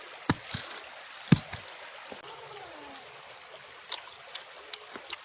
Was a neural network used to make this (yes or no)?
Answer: no